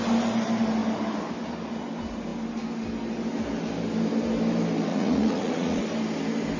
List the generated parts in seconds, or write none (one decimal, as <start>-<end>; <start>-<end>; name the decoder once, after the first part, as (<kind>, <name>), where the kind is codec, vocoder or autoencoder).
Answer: 4.9-5.8 (vocoder, Vocos)